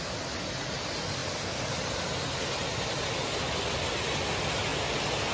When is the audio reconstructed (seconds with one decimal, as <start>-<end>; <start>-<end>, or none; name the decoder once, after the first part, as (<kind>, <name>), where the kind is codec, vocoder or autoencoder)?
none